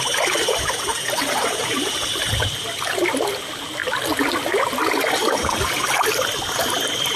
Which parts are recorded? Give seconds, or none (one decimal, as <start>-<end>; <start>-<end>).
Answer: 0.0-0.9; 2.3-7.2